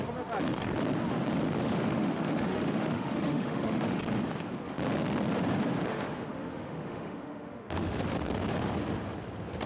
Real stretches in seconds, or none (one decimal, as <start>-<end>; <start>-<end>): 0.0-1.6; 4.0-5.9; 8.0-9.7